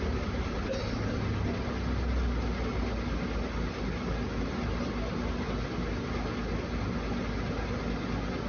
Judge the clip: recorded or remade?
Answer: recorded